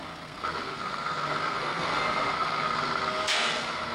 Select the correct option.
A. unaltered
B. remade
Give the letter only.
B